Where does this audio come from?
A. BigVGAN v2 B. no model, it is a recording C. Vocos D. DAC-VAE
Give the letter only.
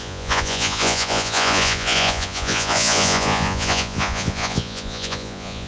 C